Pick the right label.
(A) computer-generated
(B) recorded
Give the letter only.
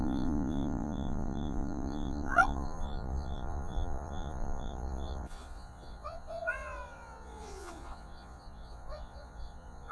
A